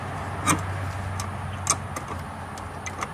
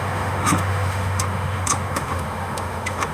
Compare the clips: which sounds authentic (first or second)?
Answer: first